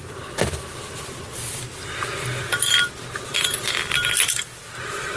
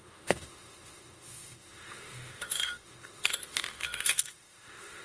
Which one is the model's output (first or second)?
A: second